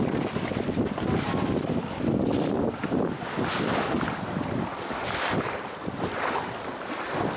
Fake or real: real